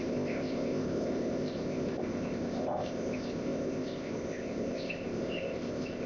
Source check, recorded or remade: remade